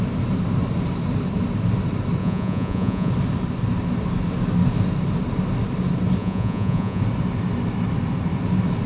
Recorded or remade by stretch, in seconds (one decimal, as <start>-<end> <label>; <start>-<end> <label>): 0.0-2.2 recorded; 2.2-3.1 remade; 3.1-6.2 recorded; 6.2-7.0 remade; 7.0-8.9 recorded